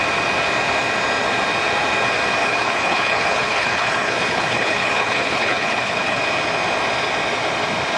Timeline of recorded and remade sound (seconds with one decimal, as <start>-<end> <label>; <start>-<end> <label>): 0.0-2.4 recorded; 2.4-6.2 remade; 6.2-8.0 recorded